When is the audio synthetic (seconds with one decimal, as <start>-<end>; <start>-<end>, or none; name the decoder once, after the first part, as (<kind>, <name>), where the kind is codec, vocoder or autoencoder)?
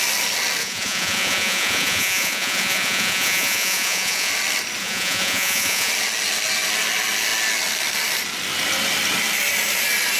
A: 0.6-4.3 (vocoder, Vocos); 4.8-5.9